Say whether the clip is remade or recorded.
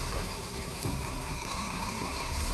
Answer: remade